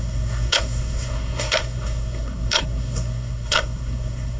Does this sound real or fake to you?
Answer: fake